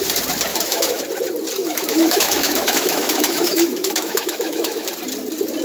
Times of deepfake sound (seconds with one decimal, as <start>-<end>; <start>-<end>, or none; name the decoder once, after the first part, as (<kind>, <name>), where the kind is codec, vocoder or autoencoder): 0.5-1.0 (autoencoder, DAC-VAE); 1.6-4.9